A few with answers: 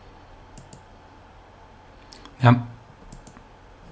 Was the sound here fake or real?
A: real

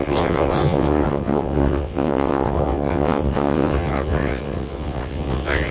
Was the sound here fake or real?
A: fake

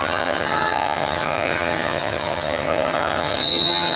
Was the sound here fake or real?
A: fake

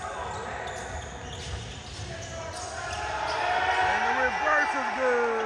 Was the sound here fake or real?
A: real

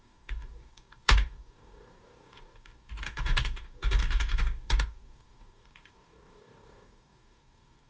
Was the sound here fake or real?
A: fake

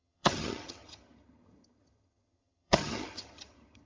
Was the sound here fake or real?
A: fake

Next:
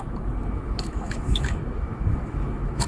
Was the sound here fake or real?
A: fake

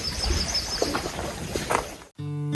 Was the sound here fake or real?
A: real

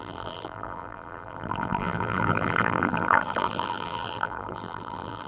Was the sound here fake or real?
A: fake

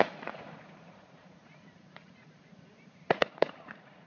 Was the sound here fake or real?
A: fake